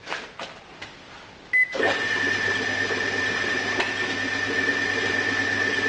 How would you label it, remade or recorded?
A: recorded